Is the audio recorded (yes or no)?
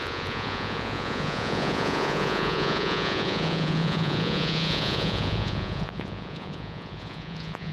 no